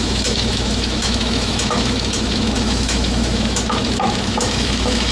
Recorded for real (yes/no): no